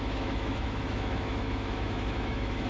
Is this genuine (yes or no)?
no